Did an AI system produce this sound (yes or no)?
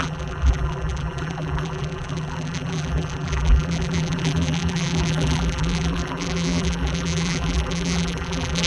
yes